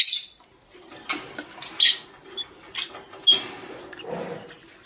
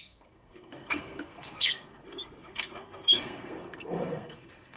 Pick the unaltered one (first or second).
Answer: first